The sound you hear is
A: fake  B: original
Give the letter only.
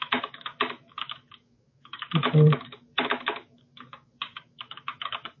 A